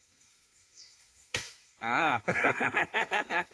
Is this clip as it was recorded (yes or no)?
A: no